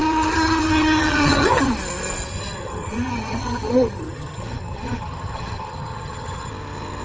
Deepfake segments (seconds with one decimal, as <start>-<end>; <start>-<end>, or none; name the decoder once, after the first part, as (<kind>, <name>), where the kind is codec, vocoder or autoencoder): 0.0-1.7 (vocoder, HiFi-GAN); 2.3-6.5